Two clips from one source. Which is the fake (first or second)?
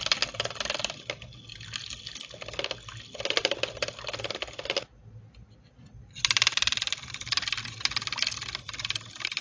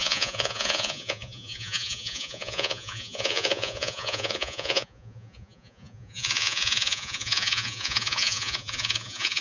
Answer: second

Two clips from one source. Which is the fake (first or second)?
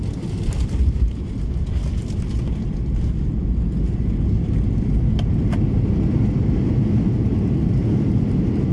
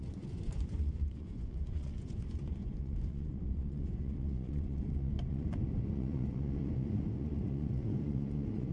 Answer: second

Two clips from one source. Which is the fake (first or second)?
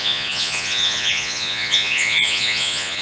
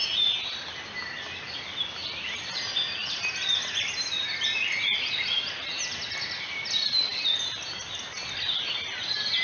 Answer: first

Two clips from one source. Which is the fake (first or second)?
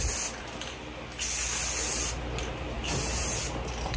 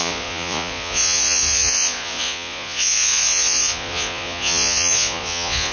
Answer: second